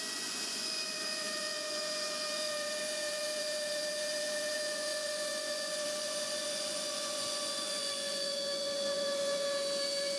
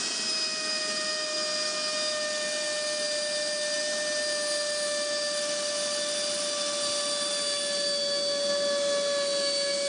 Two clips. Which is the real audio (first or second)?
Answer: second